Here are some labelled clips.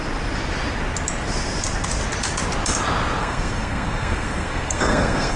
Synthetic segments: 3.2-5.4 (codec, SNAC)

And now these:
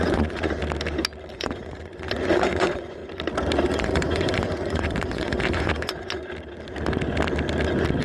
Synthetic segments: 0.0-0.6 (vocoder, Vocos); 1.3-3.0; 3.6-6.2

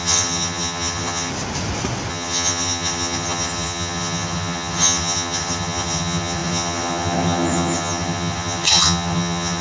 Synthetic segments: 0.0-1.3 (vocoder, HiFi-GAN); 2.1-9.6

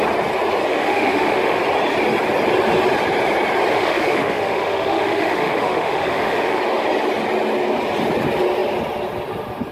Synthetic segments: 0.7-1.6 (autoencoder, DAC-VAE); 3.7-6.6

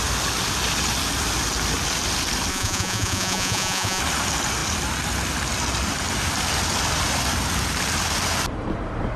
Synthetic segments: 2.5-4.0 (vocoder, Vocos)

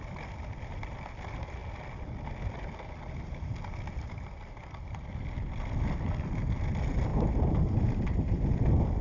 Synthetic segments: 7.1-8.4 (vocoder, BigVGAN v2)